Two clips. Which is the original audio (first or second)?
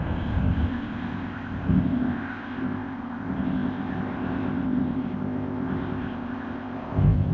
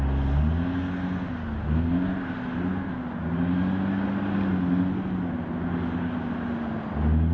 second